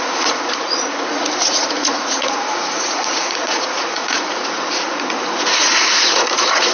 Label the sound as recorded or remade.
remade